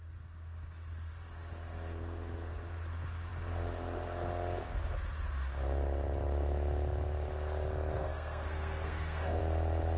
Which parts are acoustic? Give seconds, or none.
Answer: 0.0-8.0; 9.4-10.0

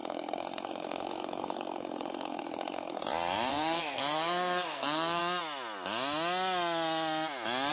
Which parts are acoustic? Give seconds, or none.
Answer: 3.0-3.5; 5.2-7.7

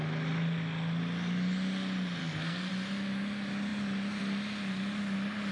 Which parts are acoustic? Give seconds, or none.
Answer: 0.0-2.2; 2.7-5.5

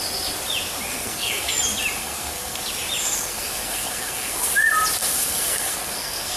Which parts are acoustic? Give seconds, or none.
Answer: 0.0-0.9; 1.5-2.0; 2.6-3.0; 4.5-5.0

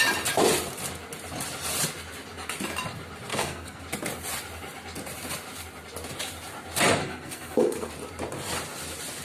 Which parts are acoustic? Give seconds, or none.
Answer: 0.0-3.3; 3.8-7.0; 7.9-9.2

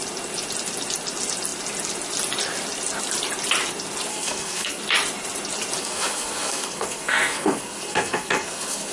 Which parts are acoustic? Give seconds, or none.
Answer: 0.0-4.1; 4.8-5.8

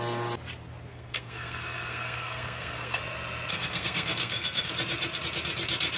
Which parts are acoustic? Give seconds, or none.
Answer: 0.0-0.9; 3.0-3.5; 4.7-6.0